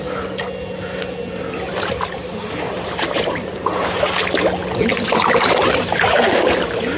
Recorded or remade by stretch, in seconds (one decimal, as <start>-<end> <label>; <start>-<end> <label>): 0.0-2.4 recorded; 2.4-4.0 remade; 4.0-4.9 recorded; 4.9-6.3 remade; 6.3-7.0 recorded